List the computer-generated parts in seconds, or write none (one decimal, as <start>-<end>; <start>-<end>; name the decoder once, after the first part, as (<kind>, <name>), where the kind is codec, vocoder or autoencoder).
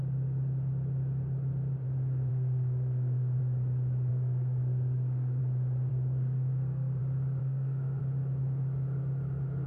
2.3-3.4 (codec, SNAC); 4.1-5.4; 5.9-7.0; 7.4-8.0